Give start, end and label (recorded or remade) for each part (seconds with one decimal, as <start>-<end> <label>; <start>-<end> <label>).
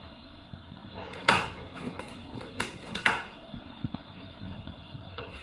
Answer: 0.0-5.4 remade